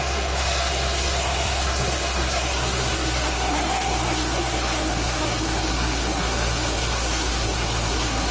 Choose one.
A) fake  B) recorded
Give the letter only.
A